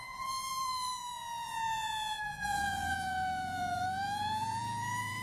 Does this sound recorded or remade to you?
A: remade